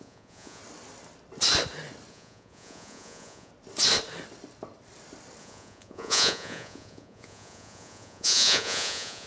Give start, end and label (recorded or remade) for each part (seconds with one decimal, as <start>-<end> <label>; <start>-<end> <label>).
0.0-0.6 remade; 0.6-2.1 recorded; 2.1-3.5 remade; 3.5-5.4 recorded; 5.4-9.3 remade